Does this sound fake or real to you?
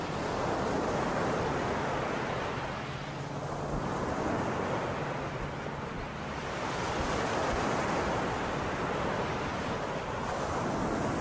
real